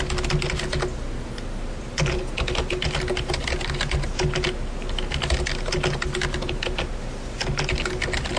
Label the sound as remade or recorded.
recorded